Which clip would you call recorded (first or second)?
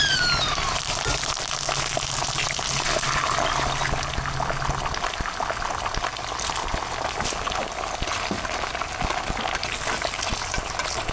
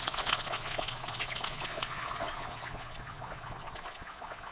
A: first